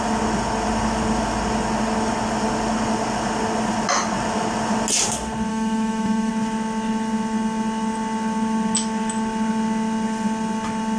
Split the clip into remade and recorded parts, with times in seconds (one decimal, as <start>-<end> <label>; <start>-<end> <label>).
0.0-5.5 recorded; 5.5-6.3 remade; 6.3-11.0 recorded